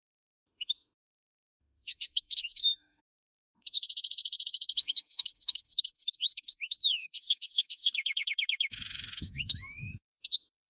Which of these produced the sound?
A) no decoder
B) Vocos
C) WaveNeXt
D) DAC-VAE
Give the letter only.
D